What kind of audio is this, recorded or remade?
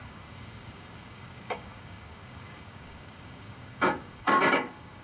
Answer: remade